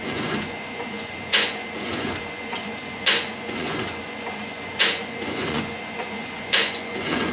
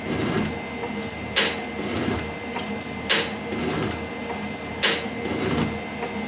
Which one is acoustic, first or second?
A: second